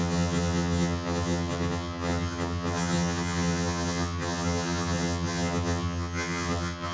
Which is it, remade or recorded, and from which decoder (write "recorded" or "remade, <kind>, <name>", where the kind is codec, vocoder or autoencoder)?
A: remade, vocoder, HiFi-GAN